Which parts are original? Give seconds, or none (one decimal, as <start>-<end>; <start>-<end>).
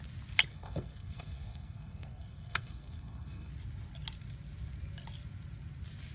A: 0.0-0.5; 3.5-6.1